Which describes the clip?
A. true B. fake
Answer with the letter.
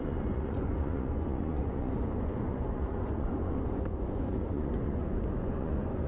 B